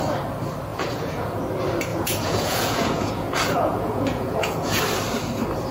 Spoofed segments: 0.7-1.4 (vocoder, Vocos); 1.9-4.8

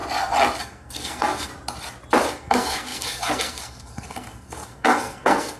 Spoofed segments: 0.6-1.5 (codec, SNAC); 2.3-5.6

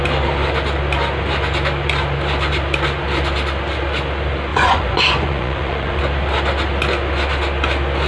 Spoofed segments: 4.5-6.0 (vocoder, Vocos)

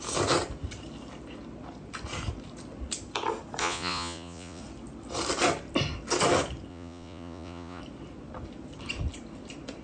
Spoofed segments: 3.6-4.6 (vocoder, Vocos); 6.7-7.8